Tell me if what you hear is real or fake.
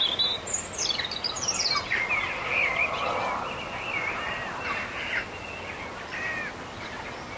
real